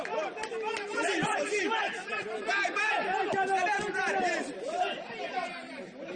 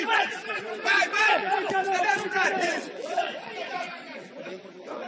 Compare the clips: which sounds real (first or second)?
first